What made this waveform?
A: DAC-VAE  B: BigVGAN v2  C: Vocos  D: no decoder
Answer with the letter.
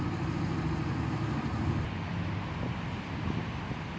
D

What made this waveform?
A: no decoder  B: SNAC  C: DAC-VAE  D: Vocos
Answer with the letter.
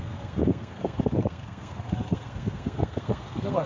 B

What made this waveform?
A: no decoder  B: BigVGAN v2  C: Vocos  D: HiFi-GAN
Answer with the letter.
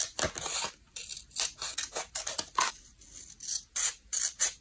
A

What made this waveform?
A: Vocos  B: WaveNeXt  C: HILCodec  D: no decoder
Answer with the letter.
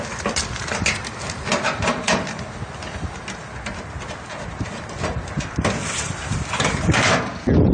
D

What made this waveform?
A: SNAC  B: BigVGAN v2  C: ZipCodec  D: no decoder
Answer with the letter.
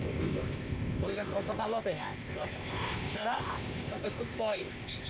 C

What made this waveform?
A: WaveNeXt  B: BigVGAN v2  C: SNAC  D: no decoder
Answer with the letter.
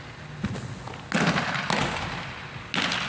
D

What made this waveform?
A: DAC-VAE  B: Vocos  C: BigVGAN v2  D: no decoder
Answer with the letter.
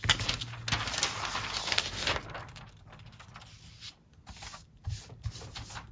D